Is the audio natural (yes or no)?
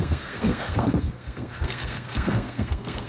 no